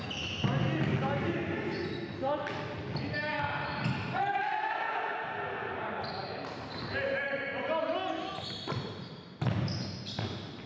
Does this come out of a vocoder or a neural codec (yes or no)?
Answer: no